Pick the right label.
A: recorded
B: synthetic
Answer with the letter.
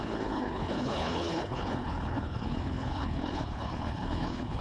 B